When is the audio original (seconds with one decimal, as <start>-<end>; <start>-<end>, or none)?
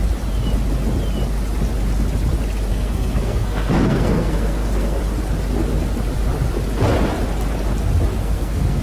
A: 0.0-2.7; 5.0-8.2